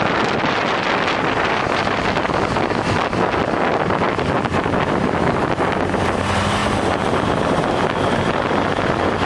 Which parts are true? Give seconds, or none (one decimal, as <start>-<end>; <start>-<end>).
0.0-9.3